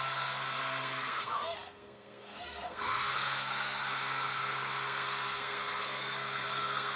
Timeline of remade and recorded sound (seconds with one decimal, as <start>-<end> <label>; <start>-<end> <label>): 0.0-7.0 remade